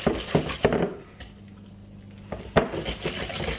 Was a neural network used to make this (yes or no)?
no